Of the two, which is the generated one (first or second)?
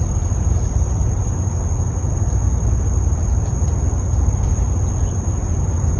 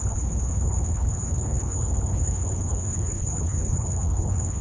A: second